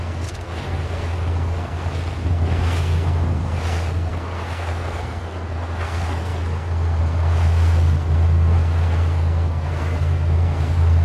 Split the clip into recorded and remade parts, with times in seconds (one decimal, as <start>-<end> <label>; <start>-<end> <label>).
0.0-11.0 remade